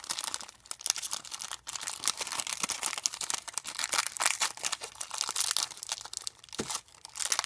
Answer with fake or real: real